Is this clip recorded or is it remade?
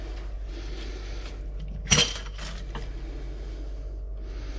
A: recorded